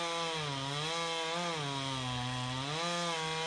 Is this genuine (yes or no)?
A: yes